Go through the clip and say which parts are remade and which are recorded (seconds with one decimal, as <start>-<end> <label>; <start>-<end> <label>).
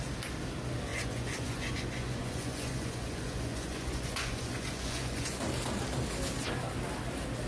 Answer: 0.0-0.9 recorded; 0.9-5.4 remade; 5.4-7.5 recorded